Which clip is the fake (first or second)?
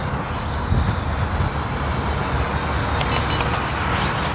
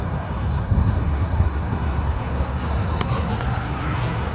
second